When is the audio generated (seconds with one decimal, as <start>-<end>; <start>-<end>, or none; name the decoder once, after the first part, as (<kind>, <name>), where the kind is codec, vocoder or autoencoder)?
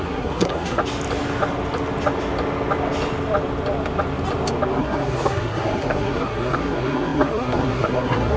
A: 0.0-0.8 (codec, SNAC); 4.8-8.4